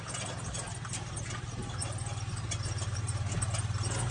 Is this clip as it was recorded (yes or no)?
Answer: yes